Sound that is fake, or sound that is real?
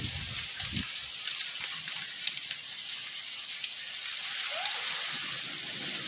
real